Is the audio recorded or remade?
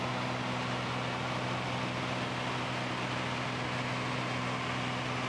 recorded